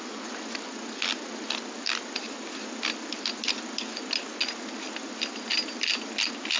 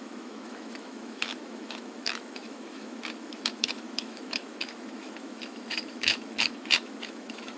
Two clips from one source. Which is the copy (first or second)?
second